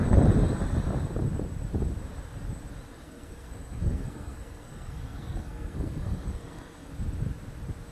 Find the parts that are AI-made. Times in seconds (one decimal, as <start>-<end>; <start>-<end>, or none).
2.9-6.9